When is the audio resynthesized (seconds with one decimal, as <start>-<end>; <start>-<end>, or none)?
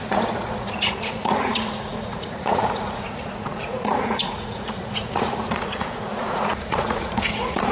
0.0-7.7